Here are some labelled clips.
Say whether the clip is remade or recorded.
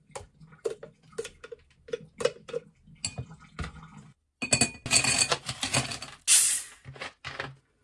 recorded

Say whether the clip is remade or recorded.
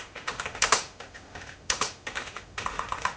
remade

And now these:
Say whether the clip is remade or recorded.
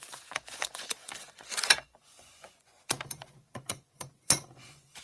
remade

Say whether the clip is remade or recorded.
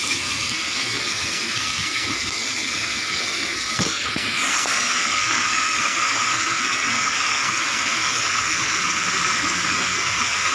remade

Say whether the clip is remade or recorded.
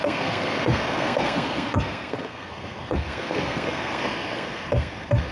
remade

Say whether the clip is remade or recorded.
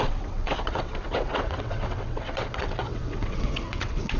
remade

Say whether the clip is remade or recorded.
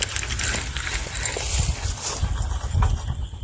recorded